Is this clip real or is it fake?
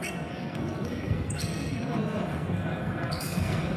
fake